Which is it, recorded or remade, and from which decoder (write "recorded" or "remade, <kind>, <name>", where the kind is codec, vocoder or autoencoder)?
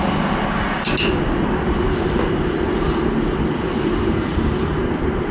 recorded